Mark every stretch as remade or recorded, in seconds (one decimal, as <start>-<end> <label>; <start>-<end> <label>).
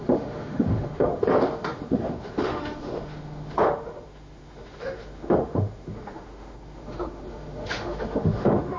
0.0-8.8 remade